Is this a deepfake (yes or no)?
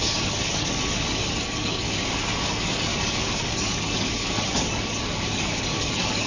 yes